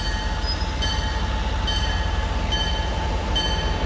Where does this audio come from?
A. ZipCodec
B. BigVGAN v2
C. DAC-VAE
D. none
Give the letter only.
D